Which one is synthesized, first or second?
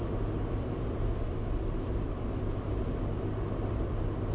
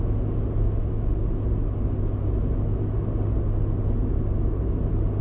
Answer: first